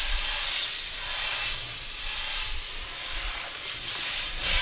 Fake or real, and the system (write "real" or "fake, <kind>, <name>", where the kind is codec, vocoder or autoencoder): real